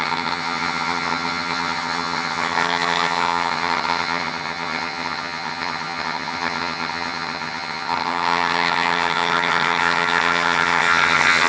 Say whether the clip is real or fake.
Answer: fake